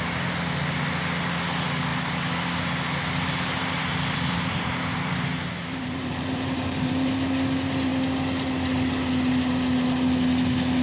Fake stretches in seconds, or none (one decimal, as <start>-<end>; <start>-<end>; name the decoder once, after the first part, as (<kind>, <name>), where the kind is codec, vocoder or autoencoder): 4.9-7.1 (vocoder, BigVGAN v2)